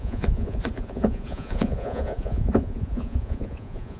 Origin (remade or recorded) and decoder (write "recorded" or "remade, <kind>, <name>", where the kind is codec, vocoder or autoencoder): remade, vocoder, Vocos